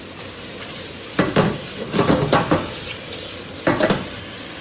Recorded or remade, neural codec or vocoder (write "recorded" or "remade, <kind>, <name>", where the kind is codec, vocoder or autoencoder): recorded